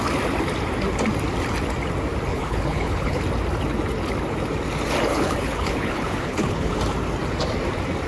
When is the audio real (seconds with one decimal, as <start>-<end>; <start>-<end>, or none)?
0.0-2.3; 3.2-5.1; 6.7-8.1